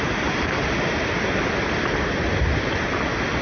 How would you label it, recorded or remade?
recorded